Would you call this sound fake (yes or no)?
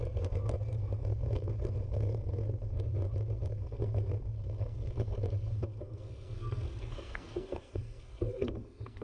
yes